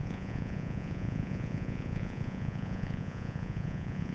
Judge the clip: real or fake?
fake